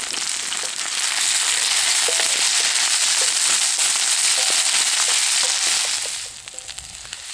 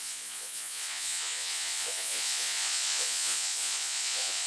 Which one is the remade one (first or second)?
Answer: second